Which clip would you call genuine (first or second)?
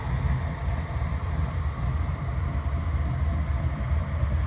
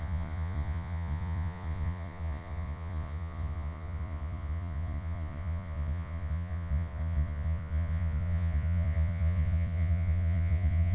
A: first